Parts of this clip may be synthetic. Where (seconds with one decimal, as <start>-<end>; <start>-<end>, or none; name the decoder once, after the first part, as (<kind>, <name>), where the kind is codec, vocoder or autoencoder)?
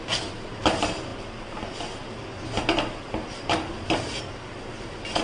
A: none